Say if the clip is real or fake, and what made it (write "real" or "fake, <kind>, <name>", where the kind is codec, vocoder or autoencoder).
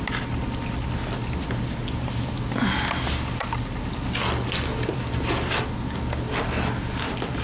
real